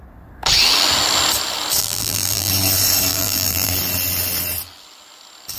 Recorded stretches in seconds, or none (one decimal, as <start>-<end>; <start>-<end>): 0.0-1.8; 2.5-3.1; 3.7-5.6